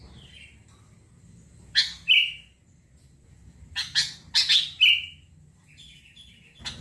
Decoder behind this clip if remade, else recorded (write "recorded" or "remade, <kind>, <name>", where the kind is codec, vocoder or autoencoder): recorded